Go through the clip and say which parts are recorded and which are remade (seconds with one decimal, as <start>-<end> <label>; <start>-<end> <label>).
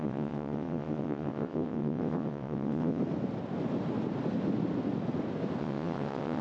0.0-3.0 remade; 3.0-5.6 recorded; 5.6-6.4 remade